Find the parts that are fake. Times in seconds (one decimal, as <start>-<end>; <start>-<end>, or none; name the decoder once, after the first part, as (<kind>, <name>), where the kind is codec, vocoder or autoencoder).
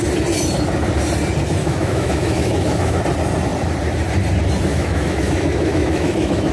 1.6-3.0 (autoencoder, DAC-VAE); 4.7-6.5